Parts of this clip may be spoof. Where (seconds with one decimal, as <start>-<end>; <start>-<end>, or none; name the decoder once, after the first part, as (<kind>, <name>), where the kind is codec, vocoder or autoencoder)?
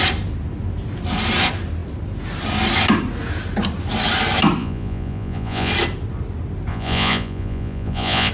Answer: 4.6-5.7 (vocoder, Vocos); 6.7-8.3